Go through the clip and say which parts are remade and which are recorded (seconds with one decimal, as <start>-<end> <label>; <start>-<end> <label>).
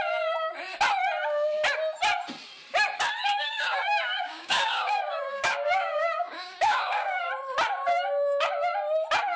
0.0-3.2 recorded; 3.2-7.3 remade; 7.3-7.9 recorded; 7.9-8.5 remade; 8.5-9.4 recorded